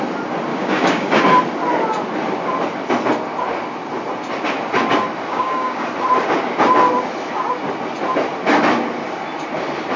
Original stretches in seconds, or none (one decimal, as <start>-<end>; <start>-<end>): 0.0-0.5; 1.2-5.3; 5.9-10.0